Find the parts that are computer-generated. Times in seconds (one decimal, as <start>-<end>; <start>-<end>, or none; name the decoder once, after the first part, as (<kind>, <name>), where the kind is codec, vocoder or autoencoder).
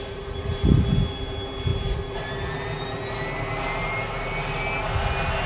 none